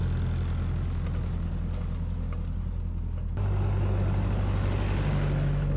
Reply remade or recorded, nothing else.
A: recorded